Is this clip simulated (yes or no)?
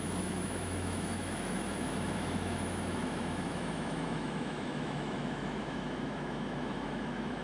yes